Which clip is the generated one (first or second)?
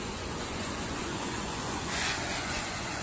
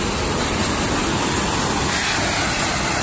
first